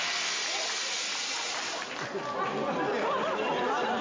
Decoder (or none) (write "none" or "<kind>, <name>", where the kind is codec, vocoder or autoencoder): none